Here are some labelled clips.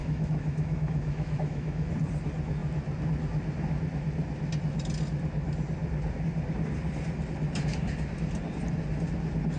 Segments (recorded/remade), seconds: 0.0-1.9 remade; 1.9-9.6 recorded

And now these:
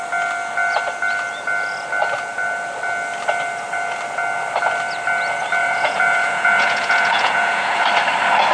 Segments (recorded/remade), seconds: 0.0-5.6 recorded; 5.6-7.8 remade; 7.8-8.5 recorded

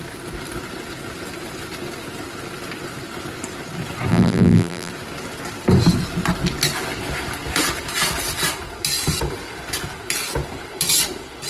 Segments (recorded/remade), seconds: 0.0-4.1 recorded; 4.1-4.9 remade; 4.9-11.5 recorded

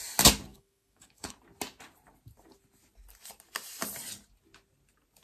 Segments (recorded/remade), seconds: 0.0-0.5 recorded; 0.5-1.3 remade; 1.3-5.2 recorded

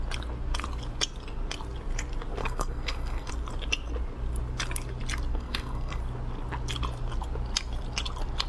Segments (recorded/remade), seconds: 0.0-2.4 recorded; 2.4-3.3 remade; 3.3-5.3 recorded; 5.3-6.0 remade; 6.0-8.5 recorded

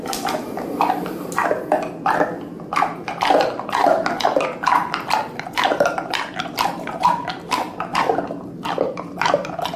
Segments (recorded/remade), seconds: 0.0-1.4 recorded; 1.4-2.5 remade; 2.5-3.8 recorded; 3.8-6.3 remade; 6.3-9.8 recorded

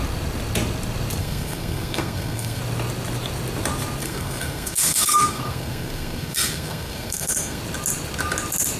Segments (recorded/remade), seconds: 0.0-1.2 recorded; 1.2-2.6 remade; 2.6-4.0 recorded; 4.0-7.6 remade; 7.6-8.8 recorded